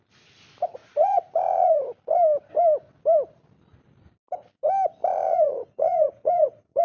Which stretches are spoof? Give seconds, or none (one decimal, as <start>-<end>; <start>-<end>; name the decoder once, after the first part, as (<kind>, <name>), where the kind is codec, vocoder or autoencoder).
0.8-1.8 (vocoder, Vocos); 5.0-6.8